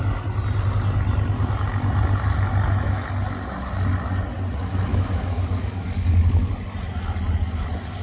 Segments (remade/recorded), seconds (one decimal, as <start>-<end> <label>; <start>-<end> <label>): 0.0-4.9 recorded; 4.9-6.5 remade; 6.5-8.0 recorded